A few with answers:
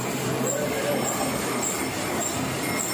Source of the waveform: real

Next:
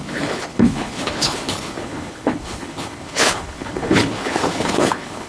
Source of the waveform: fake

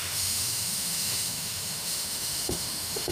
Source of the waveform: fake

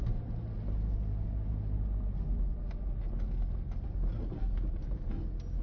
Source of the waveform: real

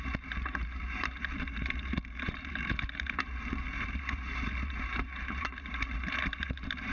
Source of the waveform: fake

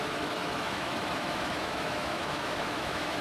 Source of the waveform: fake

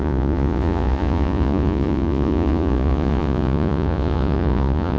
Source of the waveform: fake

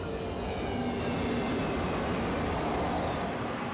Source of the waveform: real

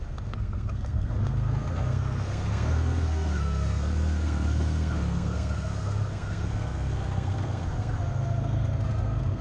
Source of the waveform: fake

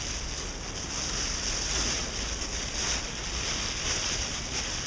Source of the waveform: real